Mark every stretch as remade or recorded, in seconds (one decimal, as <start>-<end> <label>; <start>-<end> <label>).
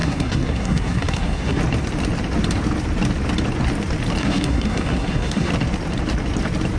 0.0-1.6 remade; 1.6-4.2 recorded; 4.2-5.5 remade; 5.5-6.8 recorded